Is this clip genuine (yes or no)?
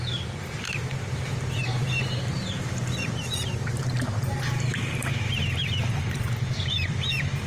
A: no